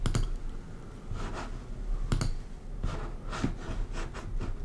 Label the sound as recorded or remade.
recorded